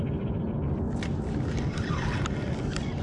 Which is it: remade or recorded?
recorded